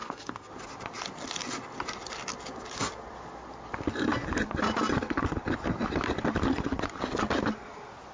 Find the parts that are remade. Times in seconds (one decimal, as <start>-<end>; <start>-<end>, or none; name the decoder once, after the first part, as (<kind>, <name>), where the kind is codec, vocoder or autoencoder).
0.0-0.5 (codec, SNAC)